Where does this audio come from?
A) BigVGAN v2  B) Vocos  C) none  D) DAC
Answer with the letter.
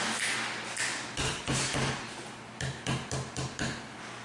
C